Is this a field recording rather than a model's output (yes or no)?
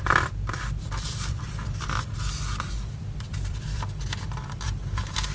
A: no